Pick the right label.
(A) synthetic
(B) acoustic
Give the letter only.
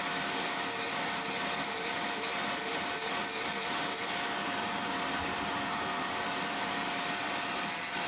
B